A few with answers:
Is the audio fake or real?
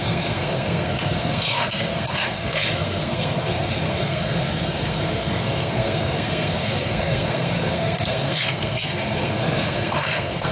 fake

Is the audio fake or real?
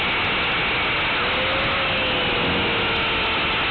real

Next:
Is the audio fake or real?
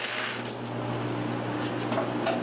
real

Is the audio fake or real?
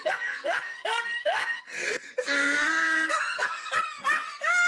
fake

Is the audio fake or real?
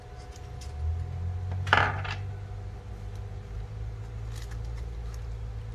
real